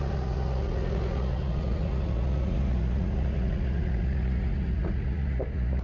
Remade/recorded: remade